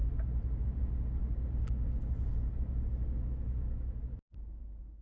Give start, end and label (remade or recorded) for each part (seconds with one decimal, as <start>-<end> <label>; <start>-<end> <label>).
0.0-5.0 recorded